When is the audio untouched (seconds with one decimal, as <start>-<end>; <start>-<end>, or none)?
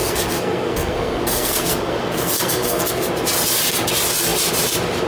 3.1-5.1